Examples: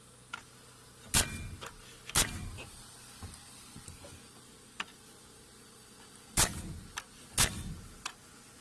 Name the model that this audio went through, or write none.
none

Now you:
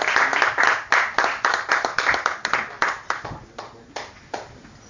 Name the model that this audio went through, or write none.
none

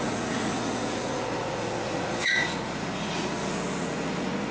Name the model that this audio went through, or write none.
vocoder, Vocos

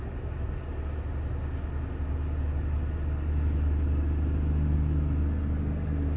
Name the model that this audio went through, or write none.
none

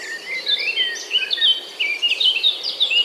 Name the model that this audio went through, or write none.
none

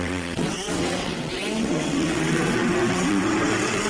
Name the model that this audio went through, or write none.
vocoder, WaveNeXt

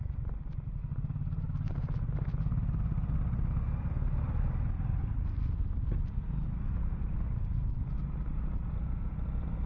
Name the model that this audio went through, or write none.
none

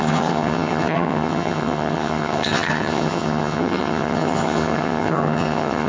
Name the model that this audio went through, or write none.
vocoder, HiFi-GAN